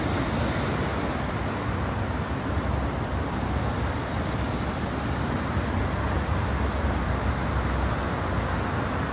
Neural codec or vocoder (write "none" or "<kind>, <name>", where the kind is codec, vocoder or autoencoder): none